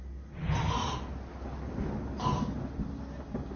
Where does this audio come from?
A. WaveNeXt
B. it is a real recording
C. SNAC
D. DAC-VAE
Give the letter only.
B